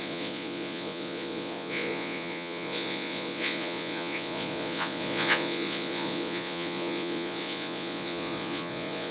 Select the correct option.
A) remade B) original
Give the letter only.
A